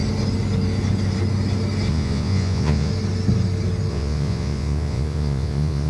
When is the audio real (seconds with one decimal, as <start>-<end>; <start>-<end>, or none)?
0.0-1.9; 2.9-3.9